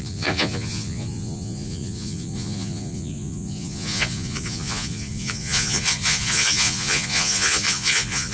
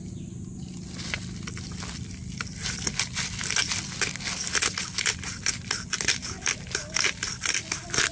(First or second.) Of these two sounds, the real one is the second